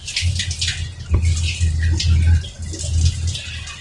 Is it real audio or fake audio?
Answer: real